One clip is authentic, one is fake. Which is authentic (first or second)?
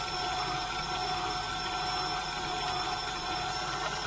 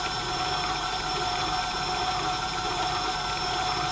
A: first